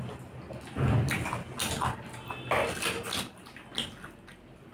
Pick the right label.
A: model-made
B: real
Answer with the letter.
B